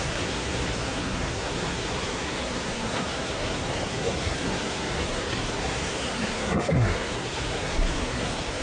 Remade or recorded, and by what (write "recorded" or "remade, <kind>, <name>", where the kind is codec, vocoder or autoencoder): remade, codec, SNAC